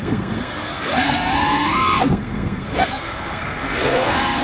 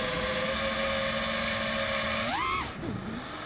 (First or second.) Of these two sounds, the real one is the second